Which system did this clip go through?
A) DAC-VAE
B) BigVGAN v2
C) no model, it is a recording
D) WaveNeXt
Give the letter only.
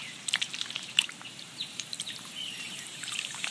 B